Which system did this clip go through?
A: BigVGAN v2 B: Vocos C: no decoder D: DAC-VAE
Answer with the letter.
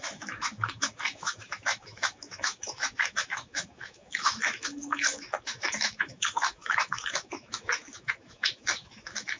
D